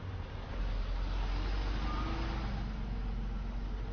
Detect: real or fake real